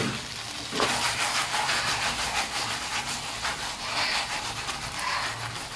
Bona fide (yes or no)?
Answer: yes